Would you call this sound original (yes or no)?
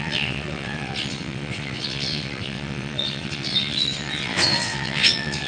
no